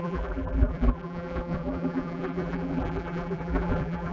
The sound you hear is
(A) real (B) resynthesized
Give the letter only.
B